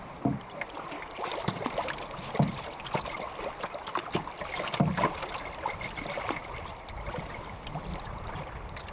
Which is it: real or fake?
real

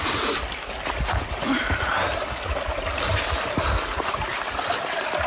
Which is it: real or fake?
real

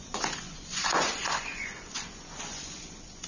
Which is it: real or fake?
fake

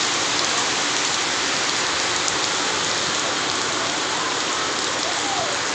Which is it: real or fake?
real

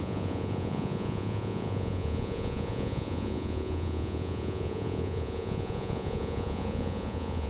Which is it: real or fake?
fake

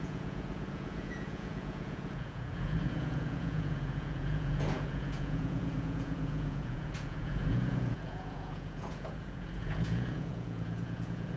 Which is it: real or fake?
fake